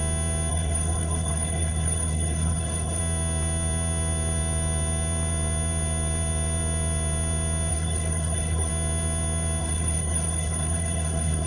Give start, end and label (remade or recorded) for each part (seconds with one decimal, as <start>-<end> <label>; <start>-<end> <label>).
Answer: 0.0-0.5 recorded; 0.5-3.0 remade; 3.0-7.7 recorded; 7.7-8.7 remade; 8.7-9.6 recorded; 9.6-11.5 remade